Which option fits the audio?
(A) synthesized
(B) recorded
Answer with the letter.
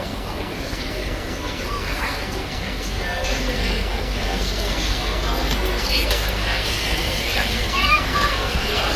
A